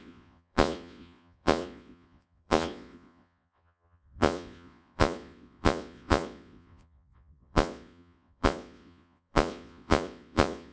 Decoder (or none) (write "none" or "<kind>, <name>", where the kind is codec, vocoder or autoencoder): vocoder, Vocos